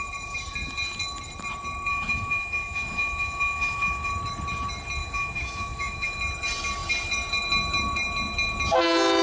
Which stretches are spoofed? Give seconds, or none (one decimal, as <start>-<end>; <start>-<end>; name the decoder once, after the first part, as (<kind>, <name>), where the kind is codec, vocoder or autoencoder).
1.9-4.1 (autoencoder, DAC-VAE); 5.0-6.2